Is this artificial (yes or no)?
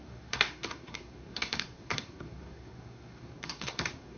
yes